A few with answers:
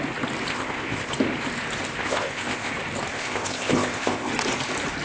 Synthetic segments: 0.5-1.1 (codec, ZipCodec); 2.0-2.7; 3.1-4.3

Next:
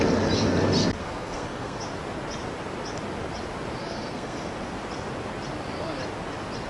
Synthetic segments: 1.0-1.8 (codec, SNAC); 3.8-4.5

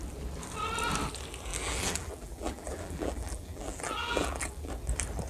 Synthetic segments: 1.5-4.7 (vocoder, BigVGAN v2)

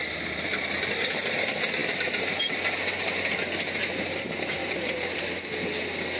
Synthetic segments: 4.6-5.2 (vocoder, BigVGAN v2)

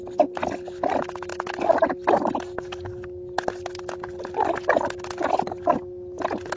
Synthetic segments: none